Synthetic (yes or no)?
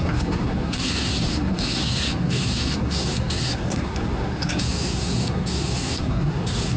yes